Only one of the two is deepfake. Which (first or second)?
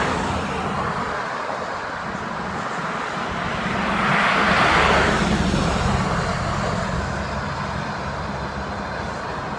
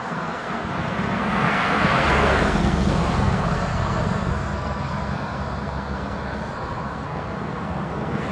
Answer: second